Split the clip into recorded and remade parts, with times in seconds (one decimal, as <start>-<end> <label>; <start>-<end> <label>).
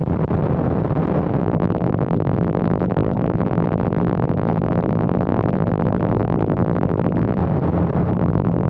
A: 0.0-1.4 recorded; 1.4-7.4 remade; 7.4-8.1 recorded; 8.1-8.7 remade